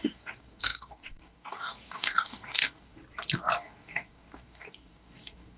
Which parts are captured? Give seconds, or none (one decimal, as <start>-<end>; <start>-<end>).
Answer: 3.0-3.6